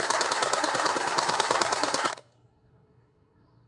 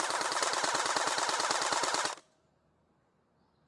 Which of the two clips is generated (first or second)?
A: first